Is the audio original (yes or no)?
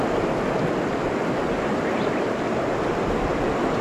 yes